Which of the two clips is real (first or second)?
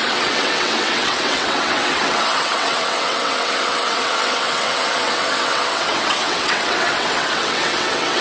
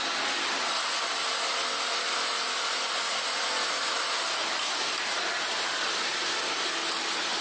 second